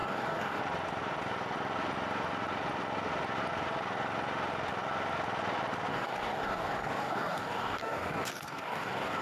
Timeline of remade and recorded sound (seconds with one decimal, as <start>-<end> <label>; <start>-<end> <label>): 0.0-0.6 remade; 0.6-5.9 recorded; 5.9-9.2 remade